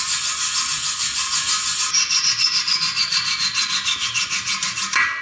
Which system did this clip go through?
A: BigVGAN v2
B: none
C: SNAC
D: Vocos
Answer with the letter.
B